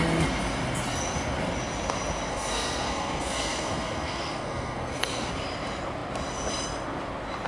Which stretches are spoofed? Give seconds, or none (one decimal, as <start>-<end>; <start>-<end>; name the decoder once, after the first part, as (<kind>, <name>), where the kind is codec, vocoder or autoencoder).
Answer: 2.3-5.3 (codec, SNAC)